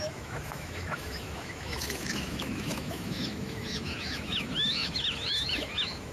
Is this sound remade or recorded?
remade